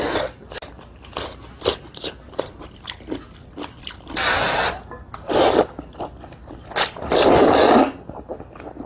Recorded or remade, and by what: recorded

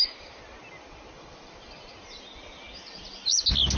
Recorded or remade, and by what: recorded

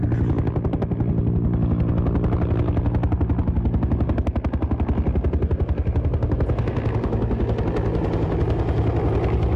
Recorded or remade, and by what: recorded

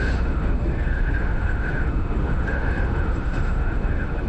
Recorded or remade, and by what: remade, autoencoder, DAC-VAE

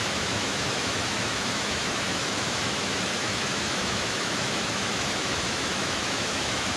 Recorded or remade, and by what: remade, autoencoder, DAC-VAE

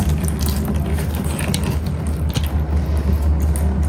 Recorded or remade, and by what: recorded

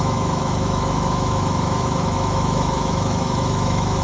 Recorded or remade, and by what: remade, autoencoder, DAC-VAE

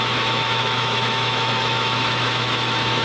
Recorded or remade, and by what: remade, autoencoder, DAC-VAE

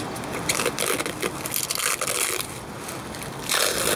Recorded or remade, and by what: recorded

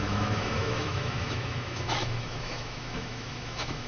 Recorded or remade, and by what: remade, autoencoder, DAC-VAE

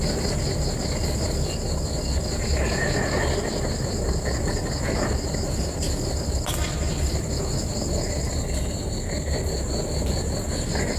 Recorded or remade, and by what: recorded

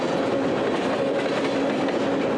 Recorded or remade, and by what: recorded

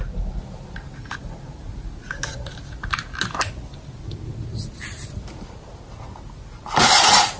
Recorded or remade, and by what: recorded